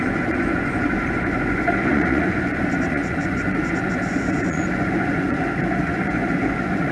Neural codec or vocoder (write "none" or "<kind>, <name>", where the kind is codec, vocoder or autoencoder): vocoder, Vocos